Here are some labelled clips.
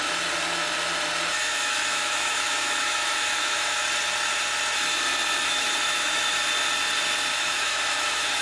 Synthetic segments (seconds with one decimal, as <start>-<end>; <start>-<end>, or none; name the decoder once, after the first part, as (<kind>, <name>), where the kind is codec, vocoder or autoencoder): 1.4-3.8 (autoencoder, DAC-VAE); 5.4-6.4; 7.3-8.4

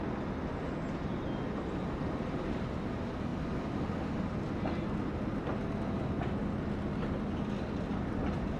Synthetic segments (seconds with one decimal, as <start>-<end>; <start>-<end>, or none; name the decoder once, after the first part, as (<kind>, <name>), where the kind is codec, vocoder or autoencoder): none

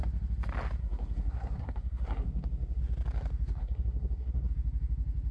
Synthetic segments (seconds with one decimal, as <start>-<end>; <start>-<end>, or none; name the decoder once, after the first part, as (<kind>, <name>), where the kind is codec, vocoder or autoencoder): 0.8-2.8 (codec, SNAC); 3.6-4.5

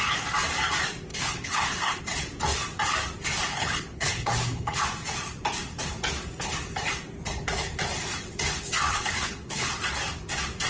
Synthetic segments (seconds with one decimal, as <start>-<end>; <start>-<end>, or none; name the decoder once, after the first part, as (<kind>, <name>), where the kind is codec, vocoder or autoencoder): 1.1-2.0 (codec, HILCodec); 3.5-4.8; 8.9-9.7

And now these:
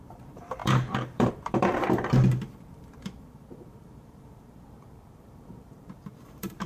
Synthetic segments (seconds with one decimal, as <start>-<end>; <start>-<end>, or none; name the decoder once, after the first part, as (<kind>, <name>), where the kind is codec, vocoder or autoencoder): 0.0-6.7 (vocoder, BigVGAN v2)

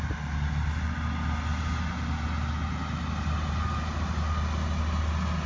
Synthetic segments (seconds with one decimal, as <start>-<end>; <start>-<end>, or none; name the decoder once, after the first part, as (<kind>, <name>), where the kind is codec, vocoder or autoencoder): none

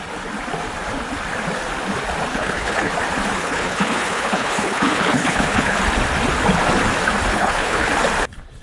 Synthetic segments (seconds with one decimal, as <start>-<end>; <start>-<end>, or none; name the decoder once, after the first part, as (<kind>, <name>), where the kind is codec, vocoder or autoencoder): 2.3-2.9 (codec, HILCodec); 3.4-5.8; 7.3-7.9